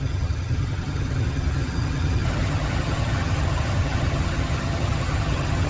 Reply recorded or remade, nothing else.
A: remade